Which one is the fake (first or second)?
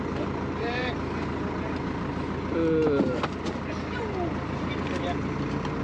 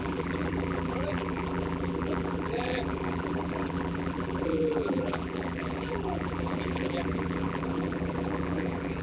second